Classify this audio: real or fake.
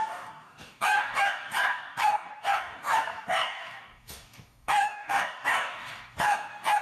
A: fake